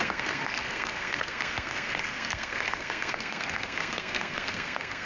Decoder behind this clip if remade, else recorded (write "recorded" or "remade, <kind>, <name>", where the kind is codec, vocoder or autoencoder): remade, codec, SNAC